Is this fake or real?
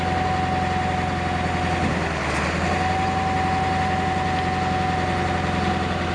real